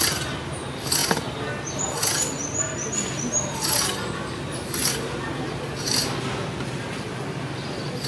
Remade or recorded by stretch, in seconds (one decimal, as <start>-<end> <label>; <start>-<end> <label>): 0.0-8.1 recorded